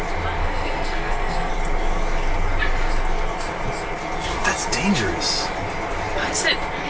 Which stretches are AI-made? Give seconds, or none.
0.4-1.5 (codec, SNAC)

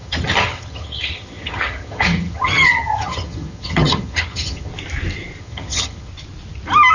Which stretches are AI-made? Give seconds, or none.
0.0-4.7 (vocoder, HiFi-GAN); 5.4-6.1

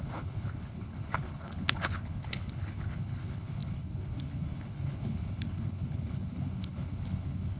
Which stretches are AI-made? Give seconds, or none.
0.0-7.6 (codec, HILCodec)